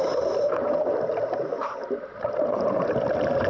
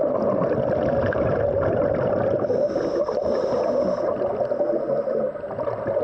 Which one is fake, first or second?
first